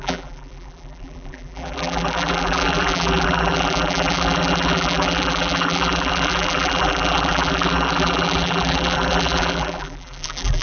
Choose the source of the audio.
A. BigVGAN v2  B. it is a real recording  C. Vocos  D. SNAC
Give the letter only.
A